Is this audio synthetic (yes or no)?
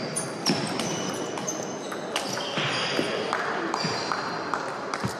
no